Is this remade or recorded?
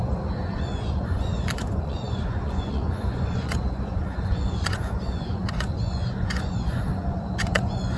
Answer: remade